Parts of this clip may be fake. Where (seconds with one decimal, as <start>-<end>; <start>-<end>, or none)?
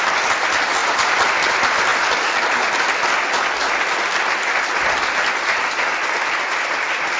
none